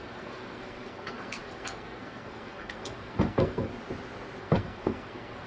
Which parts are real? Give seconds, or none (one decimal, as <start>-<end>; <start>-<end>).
3.7-4.4